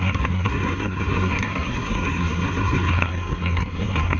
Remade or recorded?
remade